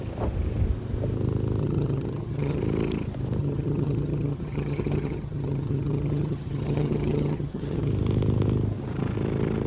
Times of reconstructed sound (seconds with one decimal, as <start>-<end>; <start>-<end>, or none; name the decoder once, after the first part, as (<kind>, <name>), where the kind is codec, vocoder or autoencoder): 1.6-2.6 (vocoder, HiFi-GAN); 3.4-7.9